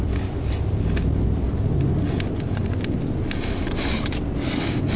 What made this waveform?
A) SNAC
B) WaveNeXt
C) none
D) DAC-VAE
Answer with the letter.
C